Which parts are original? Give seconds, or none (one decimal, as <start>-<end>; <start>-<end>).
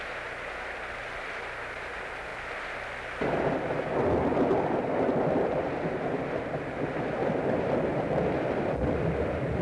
0.0-9.6